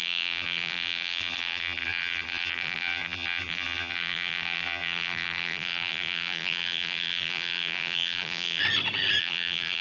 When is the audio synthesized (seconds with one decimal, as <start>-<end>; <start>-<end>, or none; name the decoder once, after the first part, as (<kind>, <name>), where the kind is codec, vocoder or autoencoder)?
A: 0.0-8.6 (vocoder, BigVGAN v2); 9.2-9.8